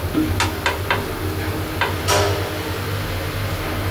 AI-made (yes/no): no